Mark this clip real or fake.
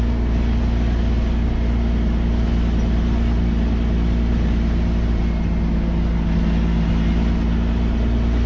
real